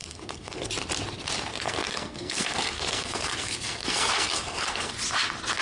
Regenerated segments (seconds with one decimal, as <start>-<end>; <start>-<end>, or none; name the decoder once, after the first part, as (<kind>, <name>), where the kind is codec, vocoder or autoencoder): 0.0-0.7 (codec, SNAC); 1.5-4.9